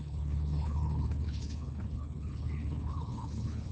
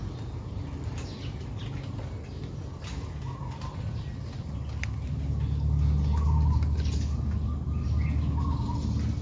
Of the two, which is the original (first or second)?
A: second